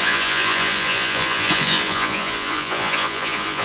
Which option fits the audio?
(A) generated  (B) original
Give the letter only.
A